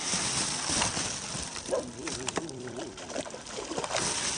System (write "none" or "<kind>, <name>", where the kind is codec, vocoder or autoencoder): vocoder, BigVGAN v2